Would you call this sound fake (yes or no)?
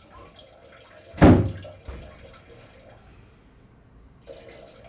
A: no